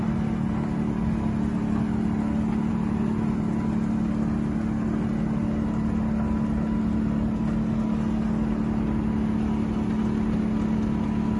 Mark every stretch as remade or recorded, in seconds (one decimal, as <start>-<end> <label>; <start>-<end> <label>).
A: 0.0-11.4 recorded